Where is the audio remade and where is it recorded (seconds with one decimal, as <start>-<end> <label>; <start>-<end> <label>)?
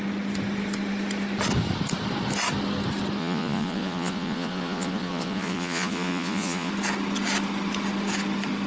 0.0-3.2 recorded; 3.2-6.7 remade; 6.7-8.7 recorded